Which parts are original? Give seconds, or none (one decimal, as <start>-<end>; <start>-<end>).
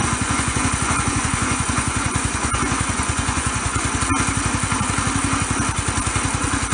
4.0-6.7